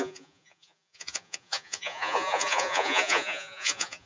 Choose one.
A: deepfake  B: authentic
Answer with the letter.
A